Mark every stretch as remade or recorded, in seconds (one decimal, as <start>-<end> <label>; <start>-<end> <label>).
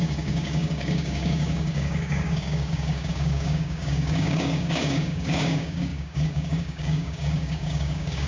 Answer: 0.0-8.3 remade